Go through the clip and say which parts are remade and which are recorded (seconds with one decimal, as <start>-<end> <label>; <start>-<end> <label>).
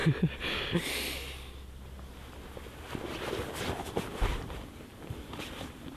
0.0-4.9 recorded; 4.9-5.5 remade; 5.5-6.0 recorded